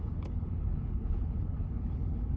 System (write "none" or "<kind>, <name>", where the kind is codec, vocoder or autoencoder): codec, HILCodec